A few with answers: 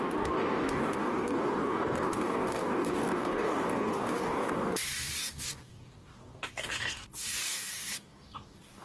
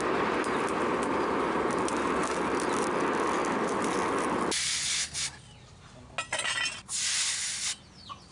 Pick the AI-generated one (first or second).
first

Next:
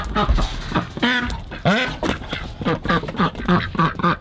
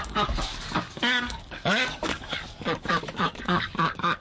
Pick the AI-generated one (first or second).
second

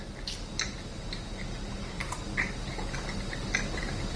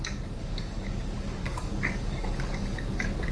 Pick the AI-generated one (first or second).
second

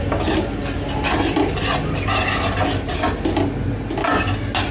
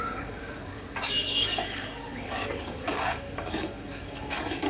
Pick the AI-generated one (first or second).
second